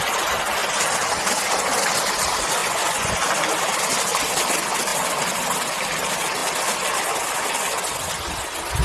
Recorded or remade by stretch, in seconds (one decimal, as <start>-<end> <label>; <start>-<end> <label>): 0.0-2.6 recorded; 2.6-3.1 remade; 3.1-8.8 recorded